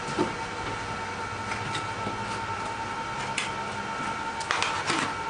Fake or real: real